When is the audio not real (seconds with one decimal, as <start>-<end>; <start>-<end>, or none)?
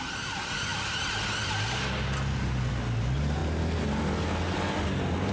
none